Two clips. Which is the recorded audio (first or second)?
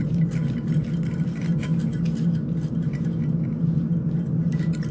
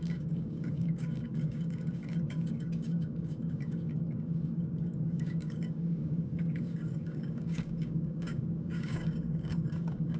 first